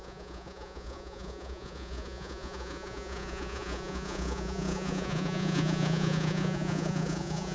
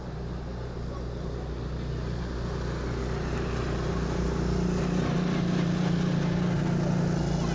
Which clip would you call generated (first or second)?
first